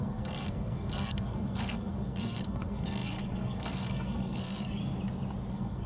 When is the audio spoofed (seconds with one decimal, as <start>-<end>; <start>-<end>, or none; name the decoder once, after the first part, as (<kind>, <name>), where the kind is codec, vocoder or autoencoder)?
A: 0.0-4.8 (codec, SNAC); 5.5-5.9